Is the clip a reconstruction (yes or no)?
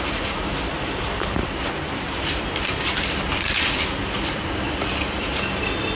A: yes